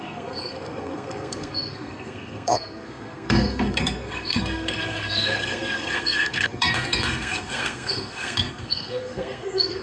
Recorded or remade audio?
remade